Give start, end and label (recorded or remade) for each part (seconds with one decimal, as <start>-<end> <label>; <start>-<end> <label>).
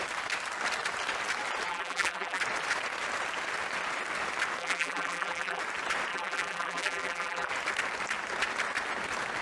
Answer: 0.0-1.7 recorded; 1.7-2.4 remade; 2.4-4.6 recorded; 4.6-5.6 remade; 5.6-6.1 recorded; 6.1-7.5 remade; 7.5-9.4 recorded